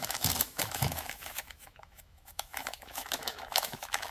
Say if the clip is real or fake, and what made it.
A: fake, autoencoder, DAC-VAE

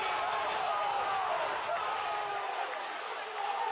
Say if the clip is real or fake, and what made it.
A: real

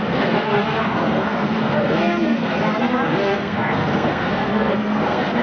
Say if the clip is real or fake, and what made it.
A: fake, codec, SNAC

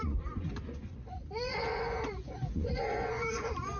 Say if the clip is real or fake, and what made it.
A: fake, vocoder, Vocos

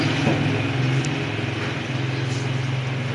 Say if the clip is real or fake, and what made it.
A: real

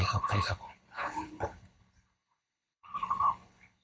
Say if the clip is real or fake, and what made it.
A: fake, codec, HILCodec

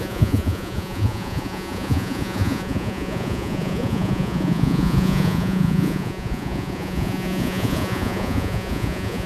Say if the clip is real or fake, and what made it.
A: fake, vocoder, Vocos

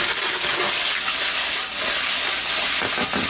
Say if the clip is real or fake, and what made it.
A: real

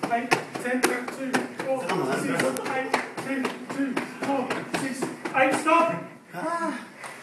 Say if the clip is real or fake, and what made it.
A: real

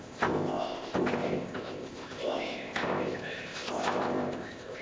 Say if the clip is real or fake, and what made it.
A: fake, codec, ZipCodec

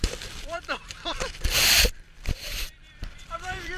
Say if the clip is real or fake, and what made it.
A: fake, vocoder, BigVGAN v2